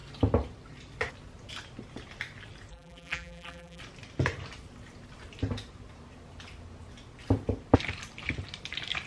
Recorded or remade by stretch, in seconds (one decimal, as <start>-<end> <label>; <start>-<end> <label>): 0.0-2.7 recorded; 2.7-3.8 remade; 3.8-9.1 recorded